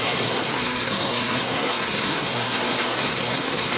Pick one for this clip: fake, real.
fake